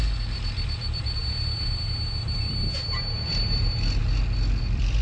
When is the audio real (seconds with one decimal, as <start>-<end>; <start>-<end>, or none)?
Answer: 4.0-4.6